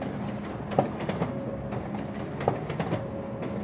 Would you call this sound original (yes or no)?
yes